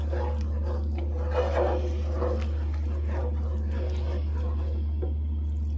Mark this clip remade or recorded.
recorded